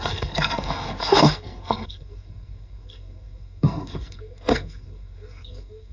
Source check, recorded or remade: remade